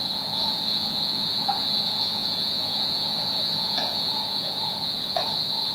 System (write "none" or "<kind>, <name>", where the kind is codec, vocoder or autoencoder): vocoder, Vocos